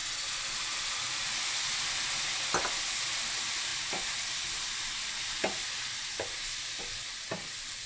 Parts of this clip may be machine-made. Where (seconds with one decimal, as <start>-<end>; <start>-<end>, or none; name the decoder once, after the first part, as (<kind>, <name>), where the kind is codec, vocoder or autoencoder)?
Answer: none